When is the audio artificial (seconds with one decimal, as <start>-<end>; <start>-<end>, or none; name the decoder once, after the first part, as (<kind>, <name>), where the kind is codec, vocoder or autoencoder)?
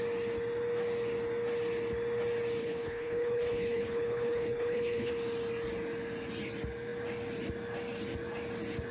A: 2.6-5.1 (codec, HILCodec)